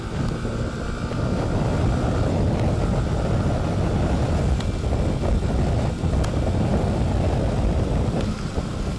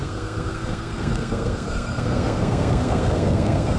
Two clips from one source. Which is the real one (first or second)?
first